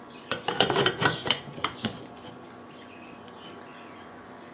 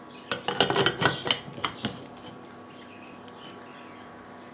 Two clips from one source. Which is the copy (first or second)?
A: first